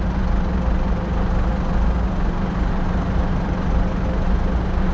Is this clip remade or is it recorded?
recorded